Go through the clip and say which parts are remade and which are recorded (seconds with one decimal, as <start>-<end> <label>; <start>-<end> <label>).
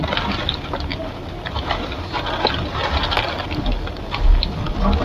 0.0-5.0 recorded